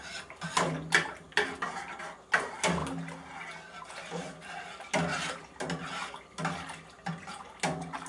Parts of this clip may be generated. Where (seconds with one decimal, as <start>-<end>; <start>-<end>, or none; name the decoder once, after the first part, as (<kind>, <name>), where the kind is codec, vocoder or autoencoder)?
none